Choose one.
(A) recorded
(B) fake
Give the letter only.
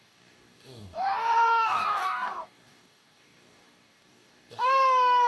B